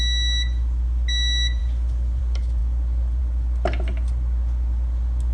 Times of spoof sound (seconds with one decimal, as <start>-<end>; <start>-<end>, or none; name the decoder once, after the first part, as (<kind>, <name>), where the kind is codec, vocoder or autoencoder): none